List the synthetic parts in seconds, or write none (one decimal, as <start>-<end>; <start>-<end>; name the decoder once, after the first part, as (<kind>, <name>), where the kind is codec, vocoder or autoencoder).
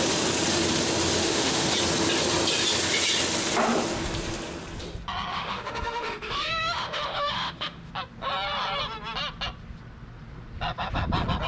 1.2-1.7 (autoencoder, DAC-VAE); 5.3-7.9